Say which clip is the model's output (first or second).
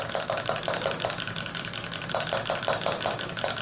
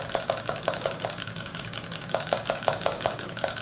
second